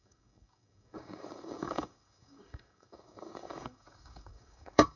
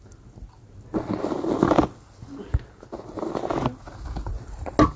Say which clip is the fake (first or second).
first